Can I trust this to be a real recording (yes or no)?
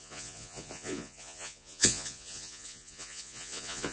no